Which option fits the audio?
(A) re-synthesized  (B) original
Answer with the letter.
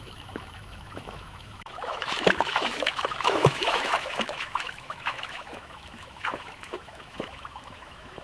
A